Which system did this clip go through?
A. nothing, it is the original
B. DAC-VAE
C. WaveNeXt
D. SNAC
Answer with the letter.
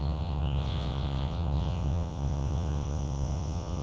C